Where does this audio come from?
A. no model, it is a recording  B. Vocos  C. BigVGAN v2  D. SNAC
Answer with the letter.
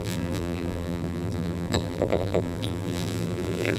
C